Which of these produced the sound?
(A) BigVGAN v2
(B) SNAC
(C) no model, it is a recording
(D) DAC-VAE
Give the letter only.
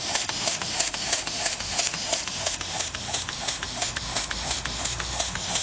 D